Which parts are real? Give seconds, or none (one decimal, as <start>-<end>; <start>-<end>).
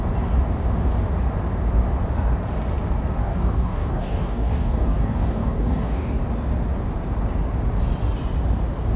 0.0-3.2; 6.2-9.0